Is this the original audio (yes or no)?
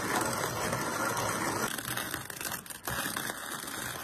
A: yes